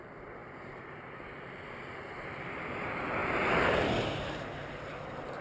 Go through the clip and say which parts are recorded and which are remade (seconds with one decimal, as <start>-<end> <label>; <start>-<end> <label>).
0.0-3.2 remade; 3.2-4.8 recorded; 4.8-5.4 remade